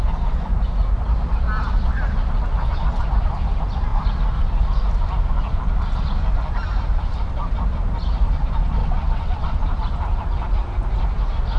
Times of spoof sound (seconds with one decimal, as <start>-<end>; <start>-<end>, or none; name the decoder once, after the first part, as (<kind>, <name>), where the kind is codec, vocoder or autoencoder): 8.8-9.6 (vocoder, WaveNeXt)